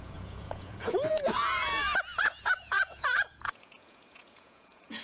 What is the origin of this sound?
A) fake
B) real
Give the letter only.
A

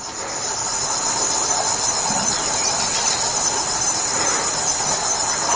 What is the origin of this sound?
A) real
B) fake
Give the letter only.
A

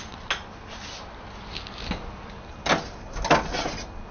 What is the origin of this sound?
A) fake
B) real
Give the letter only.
B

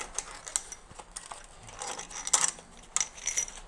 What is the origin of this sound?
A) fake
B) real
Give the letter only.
B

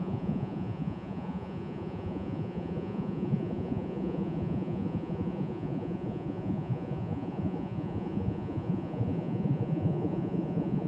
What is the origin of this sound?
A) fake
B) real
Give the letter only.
A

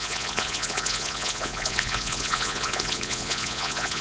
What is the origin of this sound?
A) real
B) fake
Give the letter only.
B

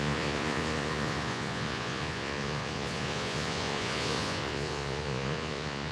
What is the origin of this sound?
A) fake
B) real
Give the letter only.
A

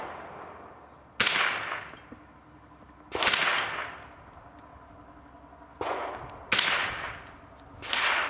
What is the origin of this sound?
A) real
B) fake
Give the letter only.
A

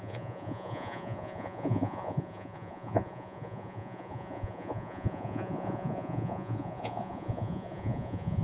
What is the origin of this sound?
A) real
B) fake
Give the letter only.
B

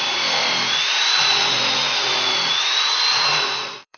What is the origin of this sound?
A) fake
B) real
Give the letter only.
A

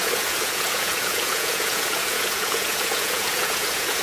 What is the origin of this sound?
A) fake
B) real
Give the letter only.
A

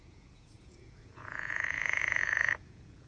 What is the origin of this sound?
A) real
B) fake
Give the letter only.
B